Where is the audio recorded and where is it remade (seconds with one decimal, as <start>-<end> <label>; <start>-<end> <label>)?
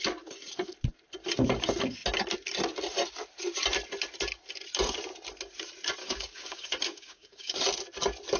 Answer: 0.0-6.0 recorded; 6.0-7.6 remade; 7.6-8.4 recorded